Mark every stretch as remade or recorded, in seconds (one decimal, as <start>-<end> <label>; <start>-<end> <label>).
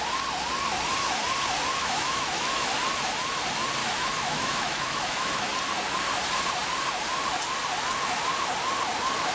0.0-1.8 recorded; 1.8-2.7 remade; 2.7-3.8 recorded; 3.8-5.5 remade; 5.5-9.3 recorded